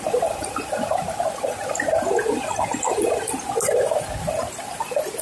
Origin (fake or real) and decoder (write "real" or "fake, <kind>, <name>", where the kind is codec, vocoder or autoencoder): real